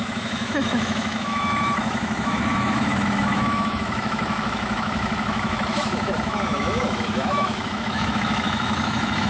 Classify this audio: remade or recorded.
remade